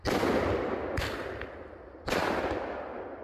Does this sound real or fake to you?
real